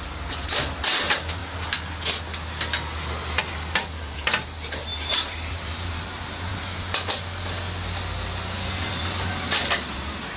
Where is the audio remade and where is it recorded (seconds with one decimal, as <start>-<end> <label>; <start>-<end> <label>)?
0.0-1.4 remade; 1.4-3.4 recorded; 3.4-6.5 remade; 6.5-8.9 recorded; 8.9-10.4 remade

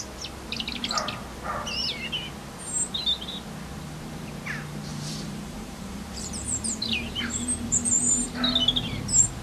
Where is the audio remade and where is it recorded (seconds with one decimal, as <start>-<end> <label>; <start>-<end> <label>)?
0.0-4.9 recorded; 4.9-8.0 remade; 8.0-9.4 recorded

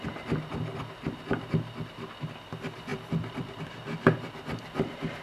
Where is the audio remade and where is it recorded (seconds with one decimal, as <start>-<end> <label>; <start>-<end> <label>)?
0.0-5.2 recorded

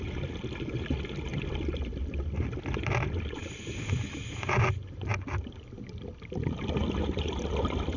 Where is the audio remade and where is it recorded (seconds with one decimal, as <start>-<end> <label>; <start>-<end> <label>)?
0.0-1.3 recorded; 1.3-2.0 remade; 2.0-3.4 recorded; 3.4-4.1 remade; 4.1-8.0 recorded

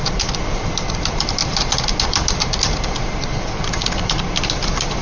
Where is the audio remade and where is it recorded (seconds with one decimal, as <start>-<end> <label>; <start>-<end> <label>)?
0.0-1.4 remade; 1.4-4.4 recorded; 4.4-5.0 remade

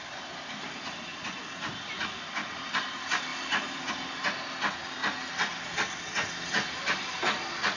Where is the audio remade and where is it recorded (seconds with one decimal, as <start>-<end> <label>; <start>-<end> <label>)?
0.0-5.0 remade; 5.0-6.8 recorded; 6.8-7.8 remade

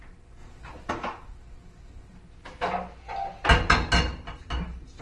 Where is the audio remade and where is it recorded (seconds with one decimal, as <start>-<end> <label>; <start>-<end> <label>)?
0.0-5.0 recorded

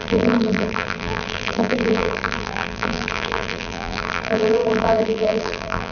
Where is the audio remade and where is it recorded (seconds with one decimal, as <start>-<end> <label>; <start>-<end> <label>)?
0.0-5.9 remade